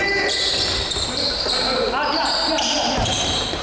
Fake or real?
fake